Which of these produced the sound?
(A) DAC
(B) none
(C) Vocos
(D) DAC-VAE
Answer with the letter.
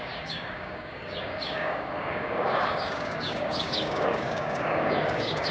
A